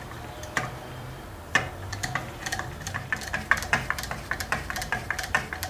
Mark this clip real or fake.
fake